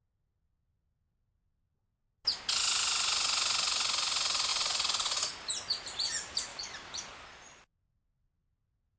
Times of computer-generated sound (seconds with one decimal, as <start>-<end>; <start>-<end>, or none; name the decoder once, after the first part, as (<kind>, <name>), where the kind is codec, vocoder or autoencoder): 4.5-5.5 (vocoder, BigVGAN v2); 6.5-7.1